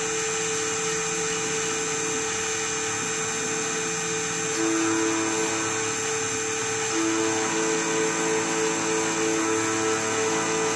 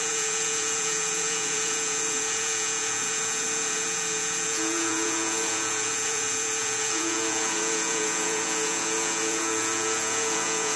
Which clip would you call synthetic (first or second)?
second